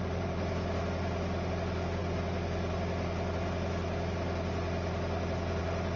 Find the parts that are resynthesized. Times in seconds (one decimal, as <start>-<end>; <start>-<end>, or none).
0.0-0.5